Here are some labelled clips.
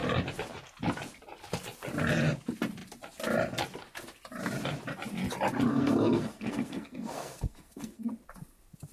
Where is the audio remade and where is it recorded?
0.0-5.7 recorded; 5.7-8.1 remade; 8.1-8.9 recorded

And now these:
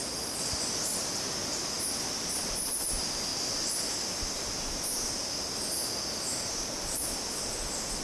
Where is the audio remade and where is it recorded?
0.0-5.8 remade; 5.8-7.0 recorded; 7.0-8.0 remade

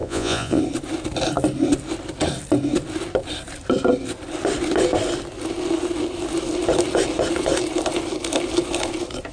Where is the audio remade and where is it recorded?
0.0-0.6 remade; 0.6-9.3 recorded

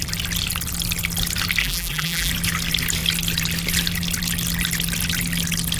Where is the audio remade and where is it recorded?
0.0-1.6 recorded; 1.6-2.3 remade; 2.3-5.8 recorded

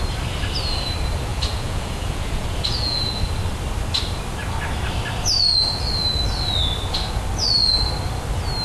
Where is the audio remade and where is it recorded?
0.0-1.3 recorded; 1.3-3.3 remade; 3.3-8.6 recorded

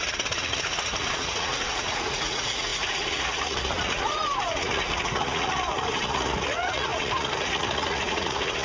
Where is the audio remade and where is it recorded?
0.0-8.6 remade

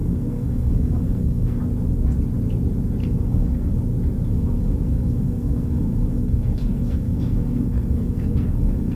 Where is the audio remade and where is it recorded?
0.0-1.6 remade; 1.6-3.0 recorded; 3.0-3.7 remade; 3.7-4.3 recorded; 4.3-9.0 remade